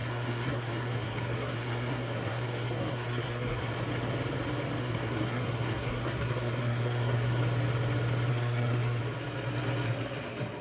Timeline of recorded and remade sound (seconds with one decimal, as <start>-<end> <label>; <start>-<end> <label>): 0.0-3.7 remade; 3.7-4.8 recorded; 4.8-7.4 remade; 7.4-8.3 recorded; 8.3-9.0 remade; 9.0-10.6 recorded